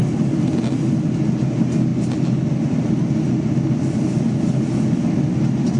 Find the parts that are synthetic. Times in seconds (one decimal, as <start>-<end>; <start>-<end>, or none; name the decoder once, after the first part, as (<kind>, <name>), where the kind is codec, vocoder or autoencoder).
none